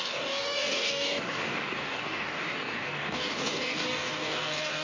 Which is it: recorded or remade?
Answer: remade